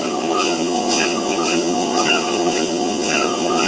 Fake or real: fake